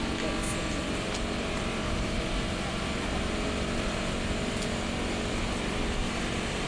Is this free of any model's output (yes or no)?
yes